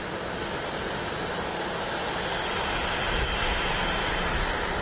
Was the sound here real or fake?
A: real